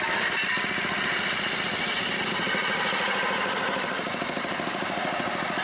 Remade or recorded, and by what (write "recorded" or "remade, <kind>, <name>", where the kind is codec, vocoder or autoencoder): recorded